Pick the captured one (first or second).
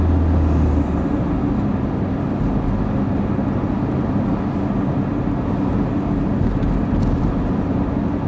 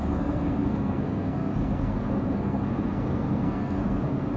first